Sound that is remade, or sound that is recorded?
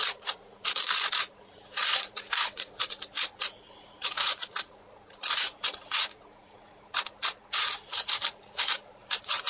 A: remade